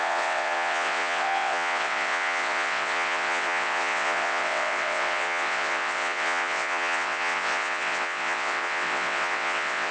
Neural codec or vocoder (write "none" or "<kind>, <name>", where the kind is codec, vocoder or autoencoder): vocoder, WaveNeXt